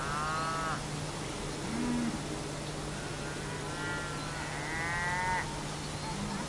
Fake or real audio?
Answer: real